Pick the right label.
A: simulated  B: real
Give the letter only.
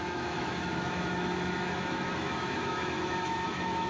A